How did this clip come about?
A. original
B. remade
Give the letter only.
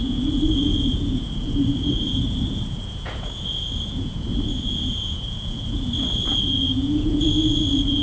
B